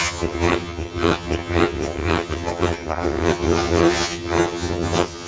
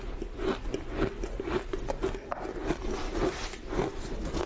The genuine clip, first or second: second